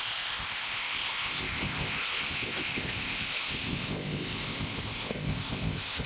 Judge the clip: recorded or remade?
remade